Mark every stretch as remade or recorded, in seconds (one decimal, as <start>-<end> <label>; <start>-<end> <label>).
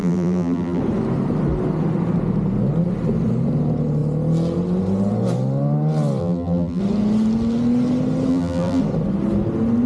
0.0-0.8 remade; 0.8-6.2 recorded; 6.2-6.8 remade; 6.8-8.3 recorded; 8.3-8.8 remade; 8.8-9.9 recorded